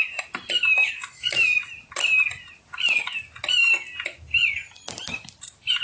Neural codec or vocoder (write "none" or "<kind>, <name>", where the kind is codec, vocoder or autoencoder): none